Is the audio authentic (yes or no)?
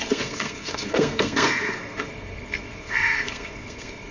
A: no